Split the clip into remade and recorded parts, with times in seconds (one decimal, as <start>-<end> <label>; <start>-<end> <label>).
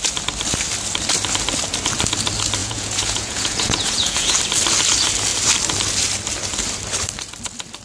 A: 0.0-2.6 recorded; 2.6-4.4 remade; 4.4-7.8 recorded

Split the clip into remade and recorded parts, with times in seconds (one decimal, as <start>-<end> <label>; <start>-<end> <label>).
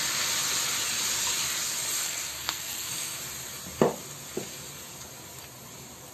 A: 0.0-2.0 recorded; 2.0-3.2 remade; 3.2-6.1 recorded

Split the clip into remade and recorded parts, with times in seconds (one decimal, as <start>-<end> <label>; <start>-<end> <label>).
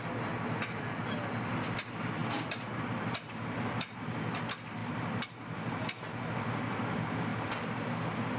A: 0.0-2.2 recorded; 2.2-2.7 remade; 2.7-4.8 recorded; 4.8-5.8 remade; 5.8-7.3 recorded; 7.3-8.0 remade; 8.0-8.4 recorded